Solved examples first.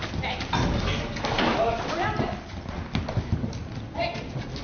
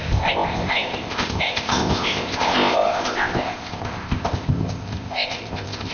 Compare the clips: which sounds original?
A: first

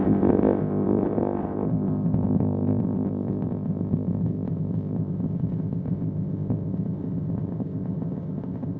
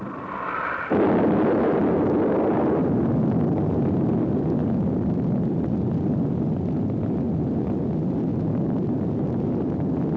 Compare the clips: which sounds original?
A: second